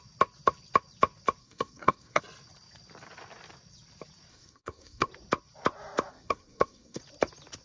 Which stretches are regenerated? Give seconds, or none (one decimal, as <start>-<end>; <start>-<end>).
1.4-2.2; 4.3-5.1; 6.1-7.0